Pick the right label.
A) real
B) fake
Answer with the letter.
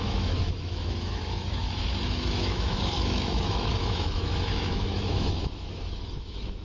B